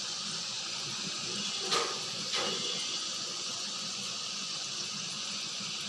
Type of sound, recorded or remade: remade